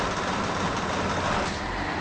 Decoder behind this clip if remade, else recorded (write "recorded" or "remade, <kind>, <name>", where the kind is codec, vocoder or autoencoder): recorded